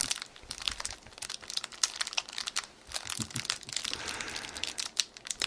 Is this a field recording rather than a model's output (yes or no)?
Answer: yes